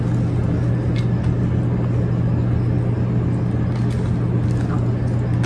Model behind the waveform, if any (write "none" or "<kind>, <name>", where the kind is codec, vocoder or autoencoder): none